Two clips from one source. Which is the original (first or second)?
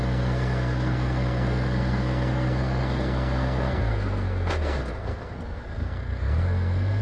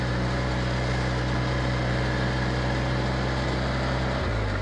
second